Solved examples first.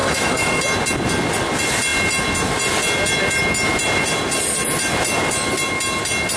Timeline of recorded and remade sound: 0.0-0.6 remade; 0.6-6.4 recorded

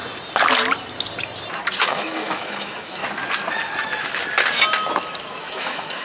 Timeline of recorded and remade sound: 0.0-1.8 recorded; 1.8-3.0 remade; 3.0-5.4 recorded; 5.4-6.0 remade

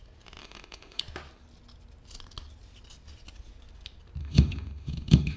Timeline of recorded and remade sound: 0.0-0.4 recorded; 0.4-1.0 remade; 1.0-4.2 recorded; 4.2-5.4 remade

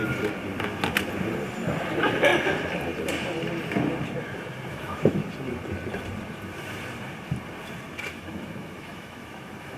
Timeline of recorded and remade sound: 0.0-1.9 recorded; 1.9-2.3 remade; 2.3-4.7 recorded; 4.7-5.2 remade; 5.2-8.1 recorded; 8.1-9.8 remade

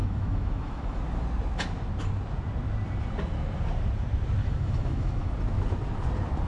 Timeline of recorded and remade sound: 0.0-1.0 remade; 1.0-4.4 recorded; 4.4-5.3 remade; 5.3-6.5 recorded